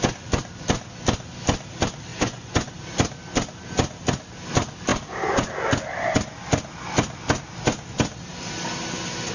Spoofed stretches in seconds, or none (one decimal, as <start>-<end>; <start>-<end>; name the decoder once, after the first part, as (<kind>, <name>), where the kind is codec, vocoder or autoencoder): 2.1-2.7 (vocoder, Vocos)